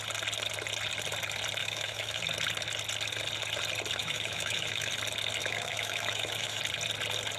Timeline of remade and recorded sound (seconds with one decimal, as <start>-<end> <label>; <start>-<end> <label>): 0.0-1.6 recorded; 1.6-2.2 remade; 2.2-4.0 recorded; 4.0-4.9 remade; 4.9-5.4 recorded; 5.4-6.6 remade; 6.6-7.4 recorded